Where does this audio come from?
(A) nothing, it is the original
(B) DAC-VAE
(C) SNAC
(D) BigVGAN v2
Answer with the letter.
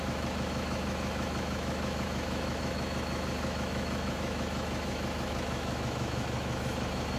B